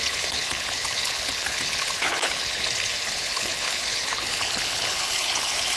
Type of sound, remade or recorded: remade